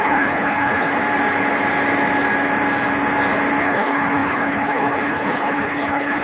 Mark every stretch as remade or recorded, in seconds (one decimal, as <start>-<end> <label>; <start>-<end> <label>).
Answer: 0.0-1.0 remade; 1.0-3.6 recorded; 3.6-6.2 remade